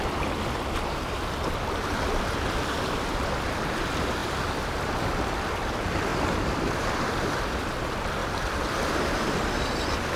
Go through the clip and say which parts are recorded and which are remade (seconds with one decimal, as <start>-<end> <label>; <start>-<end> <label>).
0.0-8.2 remade; 8.2-10.2 recorded